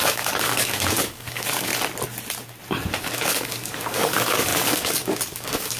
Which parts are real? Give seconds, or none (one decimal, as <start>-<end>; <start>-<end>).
1.7-3.0